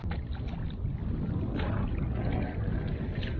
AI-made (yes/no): no